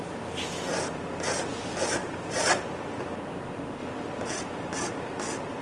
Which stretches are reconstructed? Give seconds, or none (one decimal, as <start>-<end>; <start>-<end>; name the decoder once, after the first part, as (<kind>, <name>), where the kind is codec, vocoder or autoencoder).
2.0-3.1 (vocoder, BigVGAN v2)